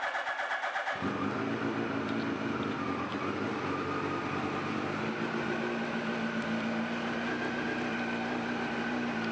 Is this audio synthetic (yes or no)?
no